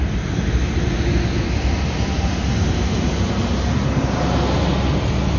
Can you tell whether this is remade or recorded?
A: recorded